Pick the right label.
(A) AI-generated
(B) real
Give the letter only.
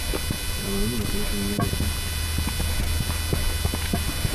B